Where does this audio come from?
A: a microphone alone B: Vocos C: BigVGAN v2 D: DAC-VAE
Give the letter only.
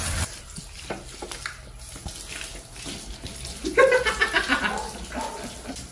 A